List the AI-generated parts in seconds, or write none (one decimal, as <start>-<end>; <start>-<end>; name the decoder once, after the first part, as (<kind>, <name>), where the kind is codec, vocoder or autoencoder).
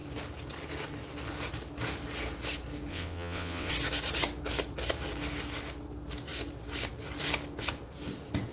2.9-3.7 (vocoder, WaveNeXt)